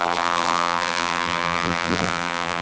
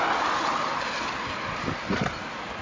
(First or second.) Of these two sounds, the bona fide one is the second